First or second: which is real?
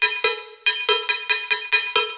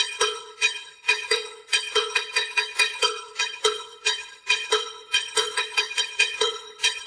first